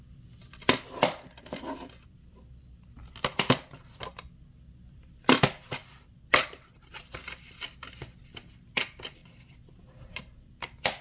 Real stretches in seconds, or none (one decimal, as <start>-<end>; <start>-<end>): 0.0-9.2